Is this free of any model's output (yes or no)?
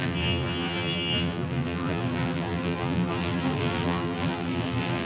no